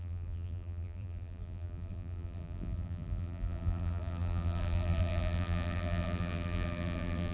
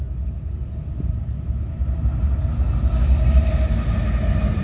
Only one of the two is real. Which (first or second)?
second